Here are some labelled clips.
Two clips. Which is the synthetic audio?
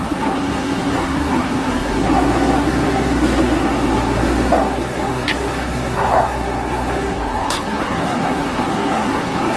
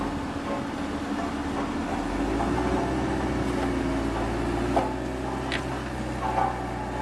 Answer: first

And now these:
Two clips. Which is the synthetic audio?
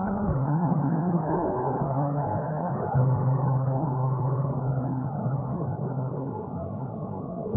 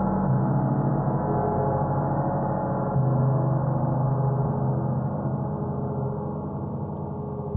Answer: first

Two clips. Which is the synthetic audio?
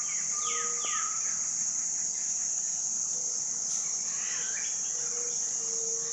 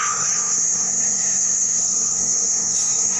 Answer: second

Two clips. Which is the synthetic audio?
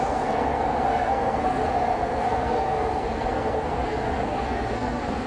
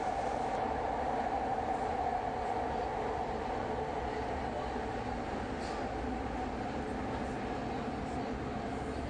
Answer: first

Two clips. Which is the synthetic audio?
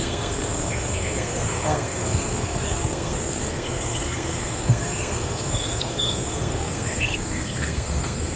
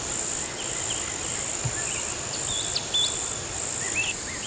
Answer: first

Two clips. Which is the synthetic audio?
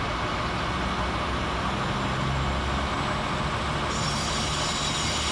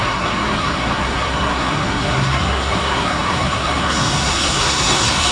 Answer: second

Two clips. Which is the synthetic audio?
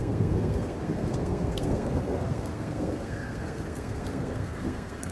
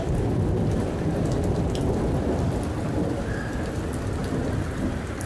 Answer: first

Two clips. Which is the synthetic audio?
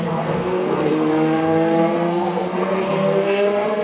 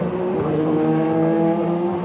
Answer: first